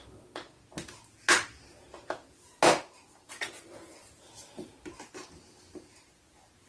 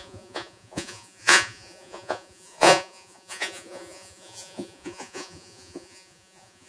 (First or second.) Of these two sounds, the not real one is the second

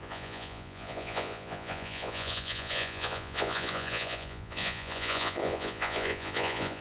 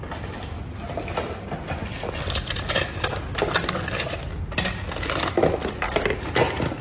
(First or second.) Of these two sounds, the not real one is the first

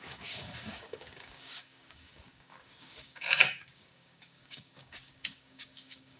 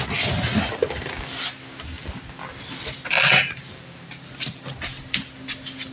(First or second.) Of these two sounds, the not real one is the first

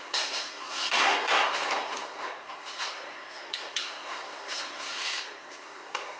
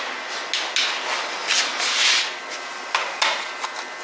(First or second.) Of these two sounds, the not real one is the first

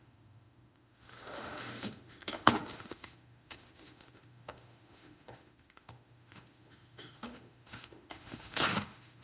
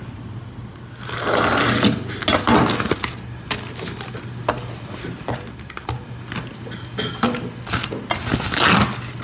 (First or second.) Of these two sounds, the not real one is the first